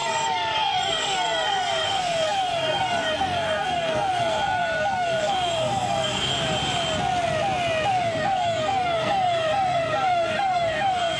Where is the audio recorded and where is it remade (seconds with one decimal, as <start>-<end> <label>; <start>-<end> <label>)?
0.0-6.3 remade; 6.3-7.9 recorded; 7.9-11.2 remade